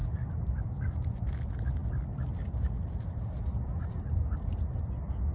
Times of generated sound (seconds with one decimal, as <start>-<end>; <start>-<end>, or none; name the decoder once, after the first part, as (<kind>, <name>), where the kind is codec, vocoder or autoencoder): none

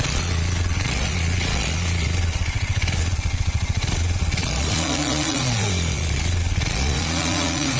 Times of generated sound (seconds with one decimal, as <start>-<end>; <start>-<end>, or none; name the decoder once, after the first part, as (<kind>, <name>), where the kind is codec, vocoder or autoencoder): 0.0-7.8 (vocoder, Vocos)

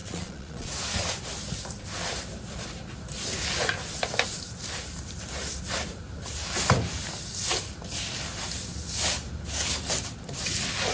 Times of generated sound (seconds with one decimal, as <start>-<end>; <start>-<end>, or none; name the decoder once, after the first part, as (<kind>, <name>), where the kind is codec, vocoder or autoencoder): 0.0-0.7 (vocoder, Vocos)

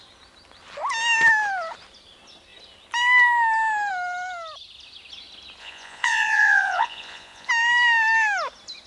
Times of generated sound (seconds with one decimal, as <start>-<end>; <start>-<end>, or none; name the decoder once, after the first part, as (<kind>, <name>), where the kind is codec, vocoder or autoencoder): 5.6-7.5 (vocoder, Vocos)

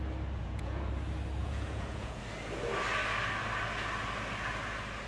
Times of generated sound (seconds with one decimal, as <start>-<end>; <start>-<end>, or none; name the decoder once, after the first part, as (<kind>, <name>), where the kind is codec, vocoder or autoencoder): 0.4-0.9 (vocoder, Vocos); 1.4-2.2

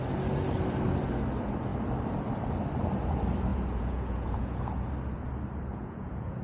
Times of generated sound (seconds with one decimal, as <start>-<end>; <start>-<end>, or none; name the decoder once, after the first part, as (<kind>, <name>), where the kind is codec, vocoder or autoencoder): 3.5-4.9 (vocoder, Vocos); 5.7-6.4

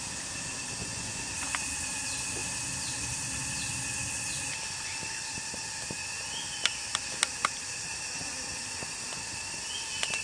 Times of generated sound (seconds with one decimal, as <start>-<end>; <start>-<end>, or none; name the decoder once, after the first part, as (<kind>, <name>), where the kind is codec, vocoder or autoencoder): 0.8-1.3 (vocoder, Vocos)

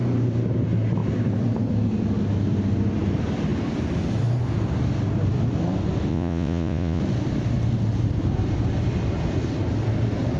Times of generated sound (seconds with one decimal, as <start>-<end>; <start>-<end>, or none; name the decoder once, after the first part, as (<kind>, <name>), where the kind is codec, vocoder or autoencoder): 6.1-7.0 (vocoder, Vocos)